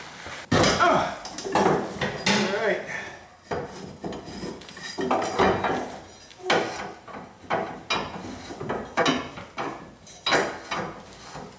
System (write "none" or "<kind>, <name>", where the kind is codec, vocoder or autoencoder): none